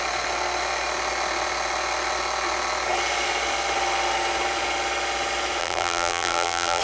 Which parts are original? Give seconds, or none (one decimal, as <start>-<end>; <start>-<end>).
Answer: 0.0-5.6